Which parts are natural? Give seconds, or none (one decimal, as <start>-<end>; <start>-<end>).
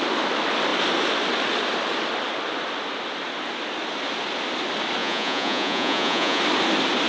0.0-5.0; 6.4-7.1